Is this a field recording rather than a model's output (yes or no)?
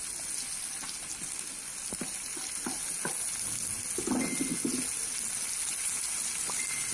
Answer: yes